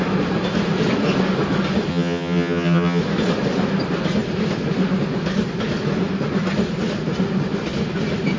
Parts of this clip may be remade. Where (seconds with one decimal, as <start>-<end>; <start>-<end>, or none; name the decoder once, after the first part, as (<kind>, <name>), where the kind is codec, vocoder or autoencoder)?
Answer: 1.9-3.0 (vocoder, HiFi-GAN)